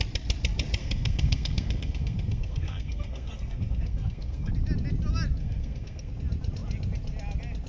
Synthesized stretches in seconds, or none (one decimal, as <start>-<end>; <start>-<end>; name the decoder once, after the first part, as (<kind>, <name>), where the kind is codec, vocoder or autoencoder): 0.8-4.5 (codec, SNAC); 5.4-6.1